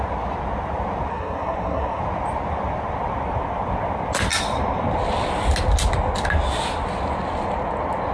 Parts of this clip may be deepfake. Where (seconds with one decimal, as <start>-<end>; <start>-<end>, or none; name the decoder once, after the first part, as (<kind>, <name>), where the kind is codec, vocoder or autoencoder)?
1.1-2.0 (codec, SNAC)